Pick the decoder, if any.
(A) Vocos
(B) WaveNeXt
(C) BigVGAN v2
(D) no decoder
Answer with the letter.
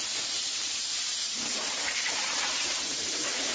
C